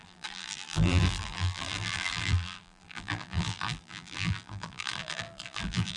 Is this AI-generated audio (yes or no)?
yes